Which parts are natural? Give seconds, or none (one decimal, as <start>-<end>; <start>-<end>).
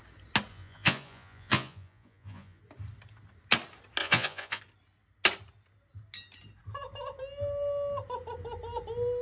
0.0-0.5; 2.6-4.0; 4.6-9.2